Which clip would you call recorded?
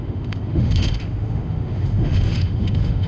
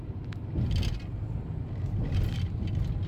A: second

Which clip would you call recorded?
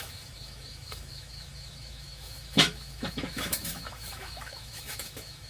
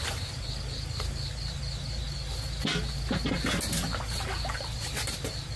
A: second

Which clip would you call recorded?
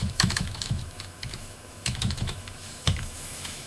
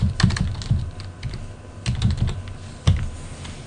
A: second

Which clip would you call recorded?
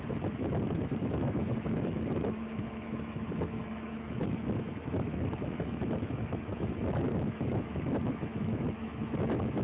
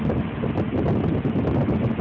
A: second